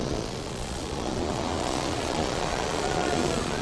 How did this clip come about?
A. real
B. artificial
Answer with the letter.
B